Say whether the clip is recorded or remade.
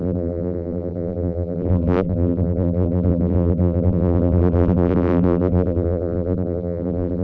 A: remade